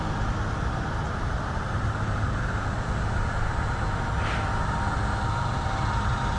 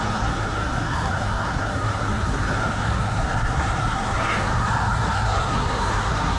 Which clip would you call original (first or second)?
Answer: first